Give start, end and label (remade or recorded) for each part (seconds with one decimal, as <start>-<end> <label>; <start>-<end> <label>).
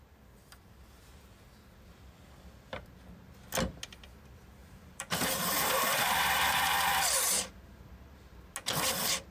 0.0-4.6 recorded; 4.6-7.5 remade; 7.5-9.3 recorded